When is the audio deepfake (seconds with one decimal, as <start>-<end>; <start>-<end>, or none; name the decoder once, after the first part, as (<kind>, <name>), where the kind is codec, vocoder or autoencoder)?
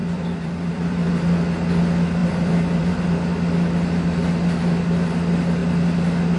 0.0-1.1 (vocoder, BigVGAN v2); 2.2-3.0